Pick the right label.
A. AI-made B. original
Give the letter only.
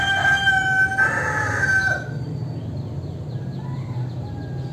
B